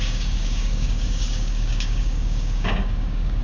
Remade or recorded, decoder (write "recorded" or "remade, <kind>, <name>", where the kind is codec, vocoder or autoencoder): remade, codec, DAC